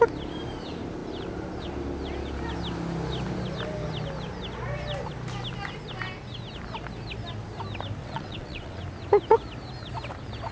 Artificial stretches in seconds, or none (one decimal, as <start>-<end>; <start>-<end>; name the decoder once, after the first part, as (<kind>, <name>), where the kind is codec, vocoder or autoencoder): 8.0-8.8 (vocoder, WaveNeXt)